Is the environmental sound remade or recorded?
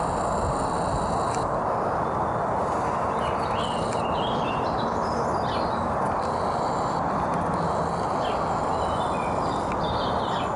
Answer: recorded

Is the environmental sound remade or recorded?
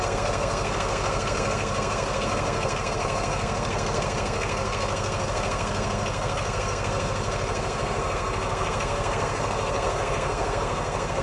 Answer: remade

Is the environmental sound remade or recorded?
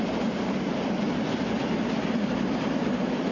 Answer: recorded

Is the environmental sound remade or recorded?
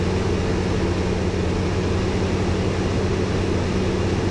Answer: recorded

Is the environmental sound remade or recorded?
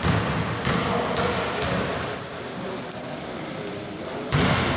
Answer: recorded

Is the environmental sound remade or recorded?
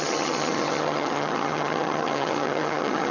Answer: remade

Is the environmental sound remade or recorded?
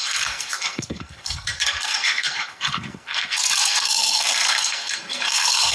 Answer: remade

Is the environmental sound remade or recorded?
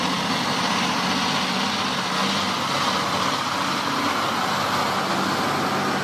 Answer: recorded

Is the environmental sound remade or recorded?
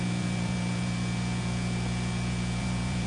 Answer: remade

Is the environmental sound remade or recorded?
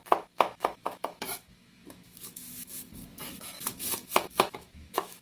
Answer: remade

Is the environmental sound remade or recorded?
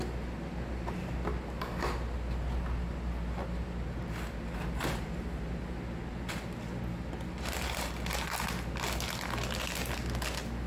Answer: recorded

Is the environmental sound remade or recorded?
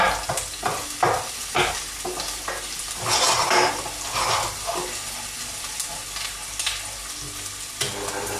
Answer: recorded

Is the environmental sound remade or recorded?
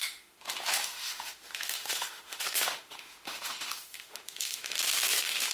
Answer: remade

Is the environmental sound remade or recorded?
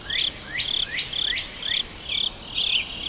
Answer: recorded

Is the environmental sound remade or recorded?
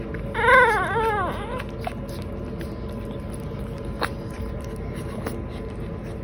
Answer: recorded